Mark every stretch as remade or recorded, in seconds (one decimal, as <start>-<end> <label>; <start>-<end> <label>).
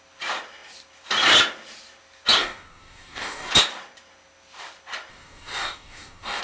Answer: 0.0-2.4 recorded; 2.4-3.5 remade; 3.5-5.1 recorded; 5.1-6.4 remade